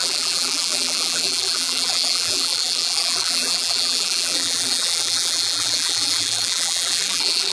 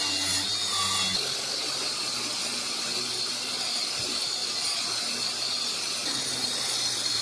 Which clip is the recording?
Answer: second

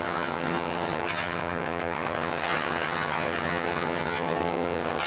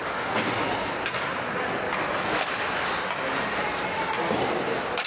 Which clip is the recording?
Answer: second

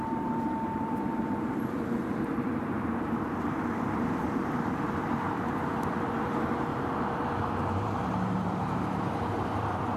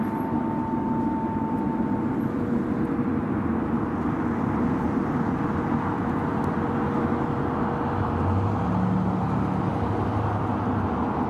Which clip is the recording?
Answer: second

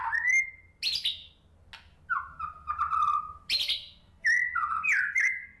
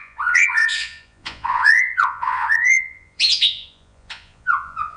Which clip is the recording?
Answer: first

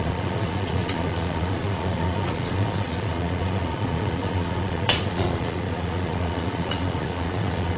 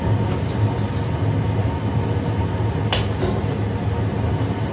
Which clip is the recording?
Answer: second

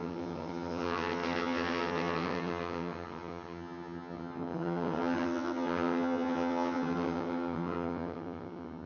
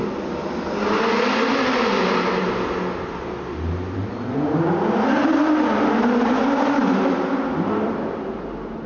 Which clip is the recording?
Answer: second